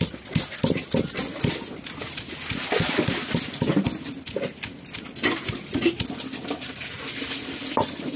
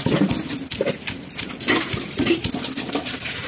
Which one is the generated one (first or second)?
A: second